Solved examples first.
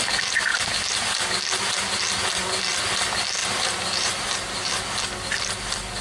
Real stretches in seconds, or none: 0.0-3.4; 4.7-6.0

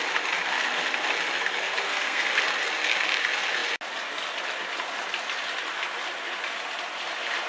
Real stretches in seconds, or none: 0.0-1.9; 2.4-7.5

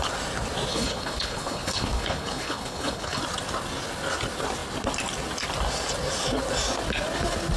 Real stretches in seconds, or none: 0.0-0.7; 3.2-7.6

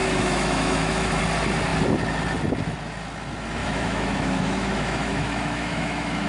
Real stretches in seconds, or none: 1.2-3.6

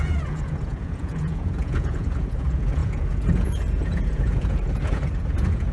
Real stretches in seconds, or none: none

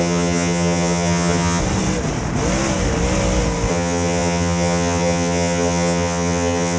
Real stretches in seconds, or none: 1.6-3.7

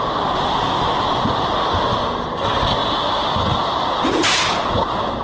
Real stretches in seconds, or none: 0.0-5.2

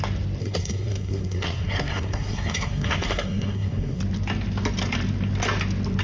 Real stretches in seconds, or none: 0.0-0.4; 4.0-6.0